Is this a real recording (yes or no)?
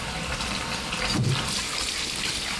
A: yes